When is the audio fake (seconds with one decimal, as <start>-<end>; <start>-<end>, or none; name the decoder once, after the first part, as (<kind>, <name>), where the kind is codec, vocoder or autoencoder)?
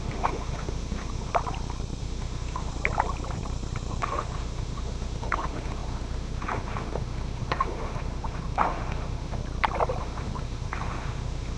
0.0-1.3 (autoencoder, DAC-VAE); 2.0-2.7; 4.0-9.4; 10.0-11.6